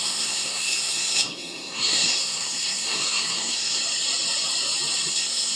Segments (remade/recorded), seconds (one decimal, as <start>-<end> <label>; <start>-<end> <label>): 0.0-3.8 remade; 3.8-5.1 recorded; 5.1-5.6 remade